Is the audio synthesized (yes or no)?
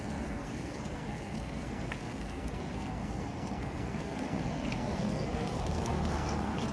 yes